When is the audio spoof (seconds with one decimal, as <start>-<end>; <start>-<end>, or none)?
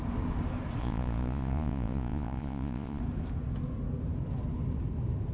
0.8-3.0